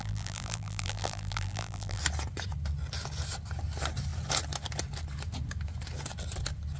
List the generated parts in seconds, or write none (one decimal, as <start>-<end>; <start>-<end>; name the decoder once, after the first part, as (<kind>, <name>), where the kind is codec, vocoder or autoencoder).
0.0-2.0 (vocoder, BigVGAN v2)